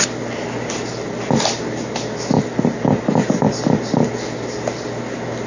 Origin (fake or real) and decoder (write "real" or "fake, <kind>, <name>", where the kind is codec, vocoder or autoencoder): real